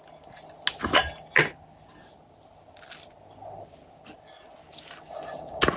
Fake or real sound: real